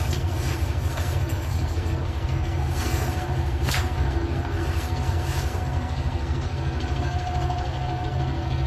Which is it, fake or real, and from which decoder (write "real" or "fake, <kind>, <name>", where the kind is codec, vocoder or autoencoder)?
fake, codec, SNAC